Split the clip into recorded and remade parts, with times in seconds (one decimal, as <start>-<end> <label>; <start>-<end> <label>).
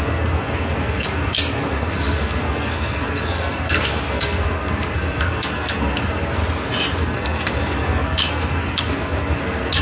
0.0-6.4 remade; 6.4-7.0 recorded; 7.0-9.8 remade